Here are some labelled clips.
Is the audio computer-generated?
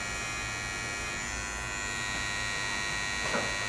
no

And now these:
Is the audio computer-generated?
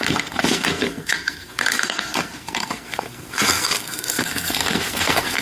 yes